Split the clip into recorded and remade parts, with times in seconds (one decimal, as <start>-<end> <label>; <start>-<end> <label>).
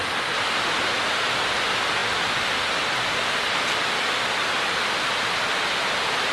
0.0-6.3 recorded